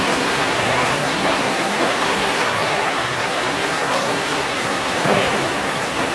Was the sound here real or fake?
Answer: fake